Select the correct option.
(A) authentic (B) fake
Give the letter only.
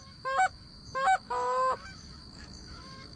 B